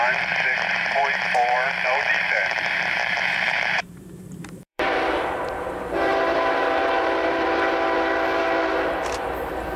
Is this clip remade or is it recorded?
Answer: remade